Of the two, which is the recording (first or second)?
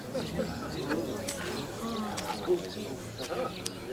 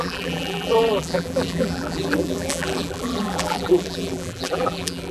first